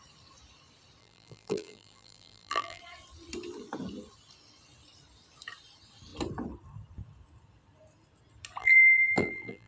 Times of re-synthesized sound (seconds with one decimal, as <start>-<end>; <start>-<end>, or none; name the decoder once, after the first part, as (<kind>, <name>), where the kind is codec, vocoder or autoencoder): 1.0-2.8 (vocoder, BigVGAN v2); 8.6-9.7